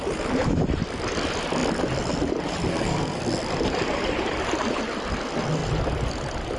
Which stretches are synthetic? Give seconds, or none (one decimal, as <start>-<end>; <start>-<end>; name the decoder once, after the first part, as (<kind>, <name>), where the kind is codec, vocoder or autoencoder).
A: 2.7-3.2 (codec, SNAC)